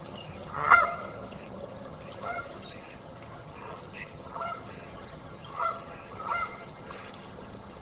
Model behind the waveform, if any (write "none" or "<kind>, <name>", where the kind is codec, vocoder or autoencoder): vocoder, HiFi-GAN